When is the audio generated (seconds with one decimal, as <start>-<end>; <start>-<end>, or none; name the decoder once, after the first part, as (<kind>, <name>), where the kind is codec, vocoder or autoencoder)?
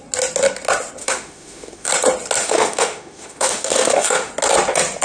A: 1.0-1.9 (autoencoder, DAC-VAE); 2.4-4.3